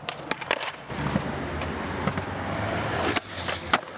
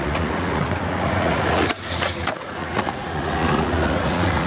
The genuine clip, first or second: first